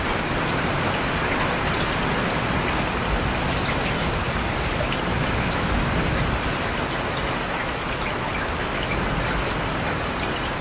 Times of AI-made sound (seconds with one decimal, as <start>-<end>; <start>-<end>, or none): 5.1-5.8